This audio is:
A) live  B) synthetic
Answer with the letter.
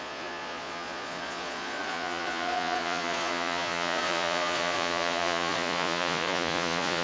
B